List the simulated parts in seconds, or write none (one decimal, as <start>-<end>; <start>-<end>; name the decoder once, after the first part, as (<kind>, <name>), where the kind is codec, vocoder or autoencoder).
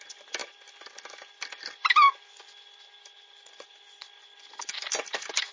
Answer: none